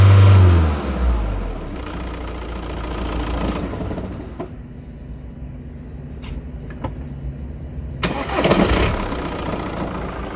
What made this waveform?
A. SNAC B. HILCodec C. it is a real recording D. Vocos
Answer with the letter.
C